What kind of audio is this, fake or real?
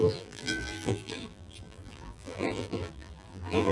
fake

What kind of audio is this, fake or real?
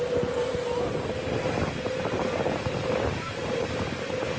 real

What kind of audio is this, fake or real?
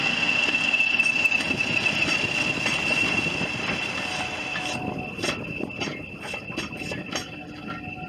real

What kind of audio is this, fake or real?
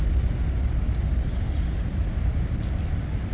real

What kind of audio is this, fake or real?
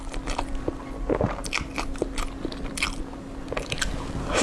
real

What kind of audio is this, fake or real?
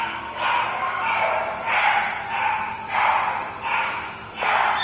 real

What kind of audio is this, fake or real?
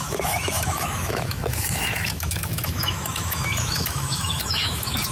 fake